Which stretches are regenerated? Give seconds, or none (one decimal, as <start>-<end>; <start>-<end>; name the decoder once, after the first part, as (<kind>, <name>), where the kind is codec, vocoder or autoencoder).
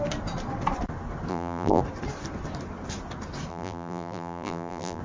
1.3-1.8 (vocoder, BigVGAN v2); 3.5-5.0